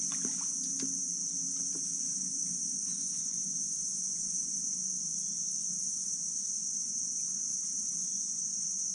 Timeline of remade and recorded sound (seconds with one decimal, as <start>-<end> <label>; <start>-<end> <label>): 0.0-0.7 remade; 0.7-2.0 recorded; 2.0-5.1 remade; 5.1-5.9 recorded; 5.9-7.5 remade; 7.5-8.1 recorded; 8.1-8.9 remade